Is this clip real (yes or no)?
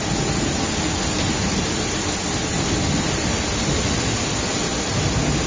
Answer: yes